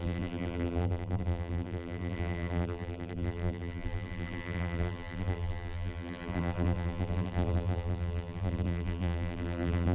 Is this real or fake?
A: fake